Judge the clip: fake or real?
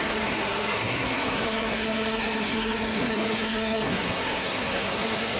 fake